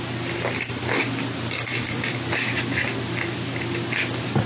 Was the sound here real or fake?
real